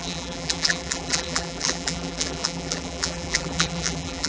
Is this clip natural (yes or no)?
no